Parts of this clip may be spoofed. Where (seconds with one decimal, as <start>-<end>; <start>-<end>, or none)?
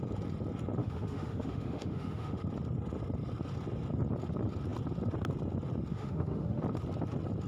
0.8-2.4; 5.9-6.6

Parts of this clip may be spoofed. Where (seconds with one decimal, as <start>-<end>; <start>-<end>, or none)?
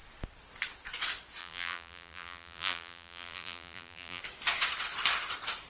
1.4-4.2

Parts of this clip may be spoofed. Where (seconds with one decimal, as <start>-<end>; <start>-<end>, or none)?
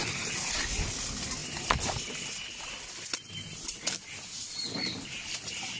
none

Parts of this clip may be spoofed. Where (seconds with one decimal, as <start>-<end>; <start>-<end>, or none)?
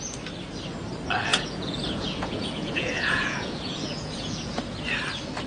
1.3-4.6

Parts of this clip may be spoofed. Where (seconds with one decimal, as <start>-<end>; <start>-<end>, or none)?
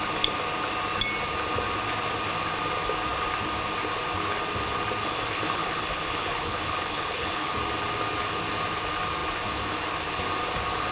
5.0-7.5